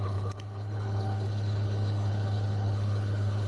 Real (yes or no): no